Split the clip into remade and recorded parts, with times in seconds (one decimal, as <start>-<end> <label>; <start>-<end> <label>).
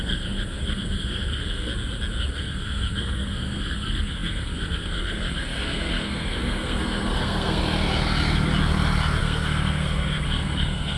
0.0-1.7 remade; 1.7-2.3 recorded; 2.3-7.6 remade; 7.6-9.2 recorded; 9.2-11.0 remade